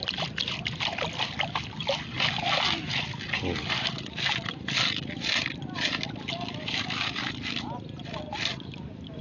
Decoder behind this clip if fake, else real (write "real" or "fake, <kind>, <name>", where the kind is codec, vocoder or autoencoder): real